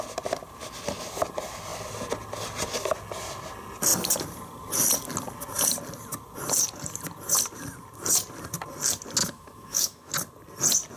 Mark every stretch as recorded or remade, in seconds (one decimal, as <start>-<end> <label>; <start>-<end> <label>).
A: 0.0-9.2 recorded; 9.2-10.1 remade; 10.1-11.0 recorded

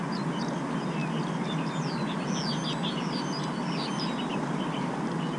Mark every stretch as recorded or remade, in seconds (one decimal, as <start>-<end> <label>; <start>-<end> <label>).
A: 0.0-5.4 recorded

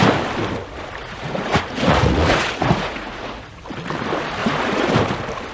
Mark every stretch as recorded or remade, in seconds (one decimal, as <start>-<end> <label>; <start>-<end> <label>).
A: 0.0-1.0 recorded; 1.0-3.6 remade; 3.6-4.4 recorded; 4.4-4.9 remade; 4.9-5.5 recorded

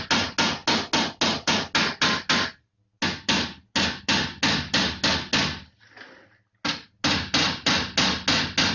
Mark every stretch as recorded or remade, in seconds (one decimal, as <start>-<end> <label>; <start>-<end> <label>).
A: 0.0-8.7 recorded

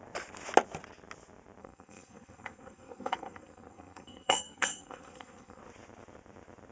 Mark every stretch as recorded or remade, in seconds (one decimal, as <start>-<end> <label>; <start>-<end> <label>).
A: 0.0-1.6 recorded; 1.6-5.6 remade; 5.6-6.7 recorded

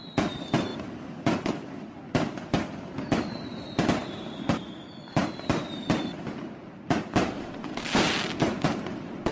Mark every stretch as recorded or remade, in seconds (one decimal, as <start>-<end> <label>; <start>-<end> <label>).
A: 0.0-9.3 recorded

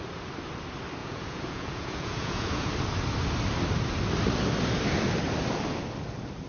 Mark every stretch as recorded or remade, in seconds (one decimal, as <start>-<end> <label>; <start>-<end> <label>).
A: 0.0-1.0 recorded; 1.0-2.7 remade; 2.7-6.5 recorded

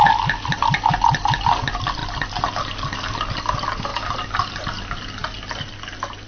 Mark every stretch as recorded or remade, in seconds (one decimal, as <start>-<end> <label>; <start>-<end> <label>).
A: 0.0-6.3 recorded